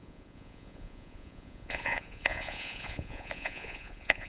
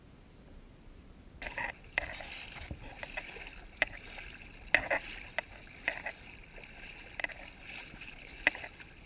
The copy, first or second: first